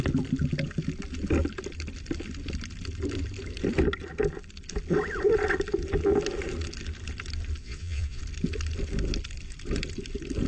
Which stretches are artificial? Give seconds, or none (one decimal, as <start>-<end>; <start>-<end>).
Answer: 7.6-8.2